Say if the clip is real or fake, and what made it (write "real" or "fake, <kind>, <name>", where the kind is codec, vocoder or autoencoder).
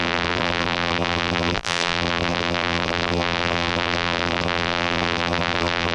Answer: fake, vocoder, BigVGAN v2